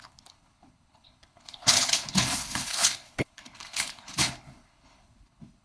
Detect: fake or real fake